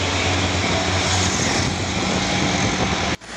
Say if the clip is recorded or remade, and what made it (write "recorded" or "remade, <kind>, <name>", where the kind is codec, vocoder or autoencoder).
recorded